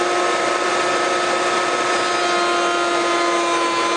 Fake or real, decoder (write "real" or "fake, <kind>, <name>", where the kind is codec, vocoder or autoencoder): real